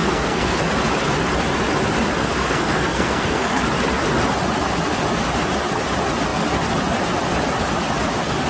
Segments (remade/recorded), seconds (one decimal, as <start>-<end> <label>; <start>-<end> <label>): 0.0-0.6 remade; 0.6-2.2 recorded; 2.2-3.6 remade; 3.6-8.5 recorded